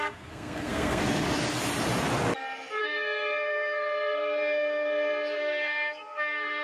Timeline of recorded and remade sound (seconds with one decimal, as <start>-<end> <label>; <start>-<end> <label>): 0.0-1.0 remade; 1.0-2.8 recorded; 2.8-6.6 remade